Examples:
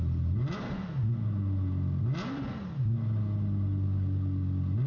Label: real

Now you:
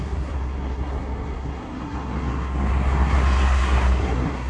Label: fake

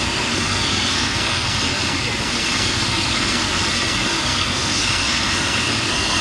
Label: fake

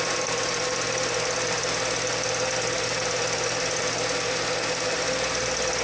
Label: real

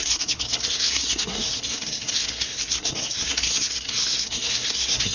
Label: fake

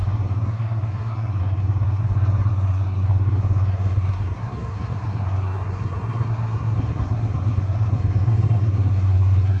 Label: fake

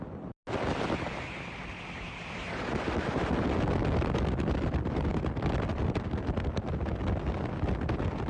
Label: real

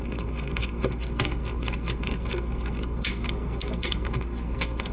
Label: fake